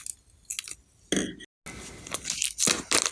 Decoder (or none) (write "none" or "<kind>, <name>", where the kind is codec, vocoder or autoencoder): none